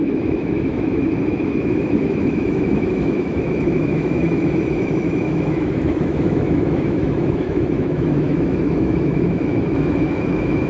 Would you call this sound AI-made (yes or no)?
yes